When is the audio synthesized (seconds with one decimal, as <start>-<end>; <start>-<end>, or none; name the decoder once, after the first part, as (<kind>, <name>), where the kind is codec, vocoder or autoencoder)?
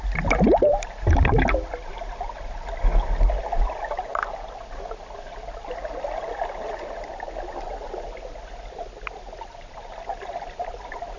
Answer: none